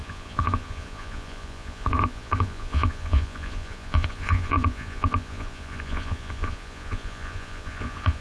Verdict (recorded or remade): remade